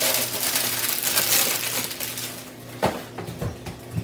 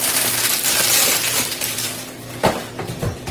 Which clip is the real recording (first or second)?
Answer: first